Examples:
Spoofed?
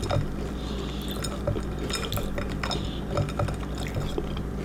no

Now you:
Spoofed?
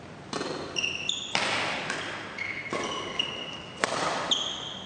no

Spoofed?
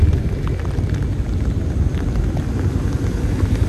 no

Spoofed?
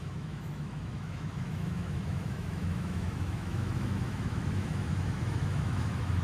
yes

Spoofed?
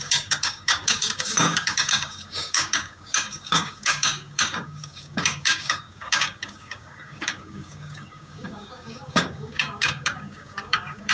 yes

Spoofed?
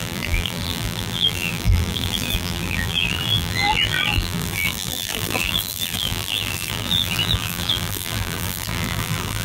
yes